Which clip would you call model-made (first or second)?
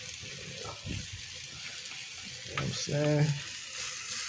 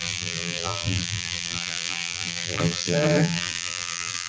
second